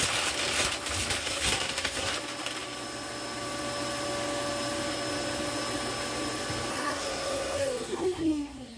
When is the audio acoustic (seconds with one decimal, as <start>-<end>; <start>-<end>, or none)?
0.0-1.2; 2.1-6.7